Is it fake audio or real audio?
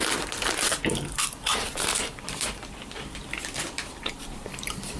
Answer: fake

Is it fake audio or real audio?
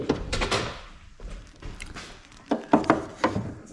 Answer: fake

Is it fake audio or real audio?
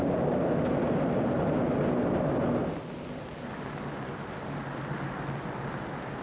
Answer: real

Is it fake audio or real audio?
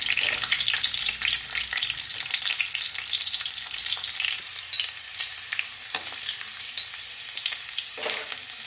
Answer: real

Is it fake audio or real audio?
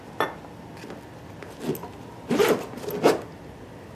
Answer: real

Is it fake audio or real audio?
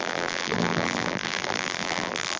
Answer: fake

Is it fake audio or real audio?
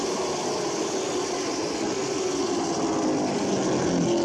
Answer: real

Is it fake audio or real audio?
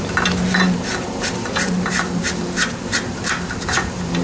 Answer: fake